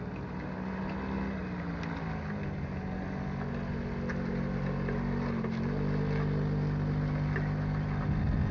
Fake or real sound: real